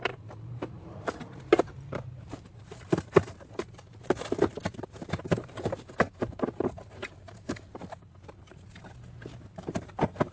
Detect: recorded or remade remade